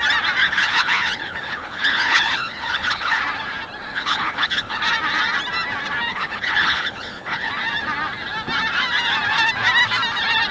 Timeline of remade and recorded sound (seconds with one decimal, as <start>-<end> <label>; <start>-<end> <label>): 0.0-0.4 recorded; 0.4-3.2 remade; 3.2-3.9 recorded; 3.9-4.8 remade; 4.8-6.1 recorded; 6.1-7.5 remade; 7.5-10.5 recorded